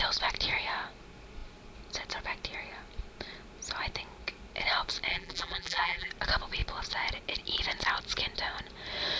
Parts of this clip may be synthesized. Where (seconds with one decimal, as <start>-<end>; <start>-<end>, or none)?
5.1-6.1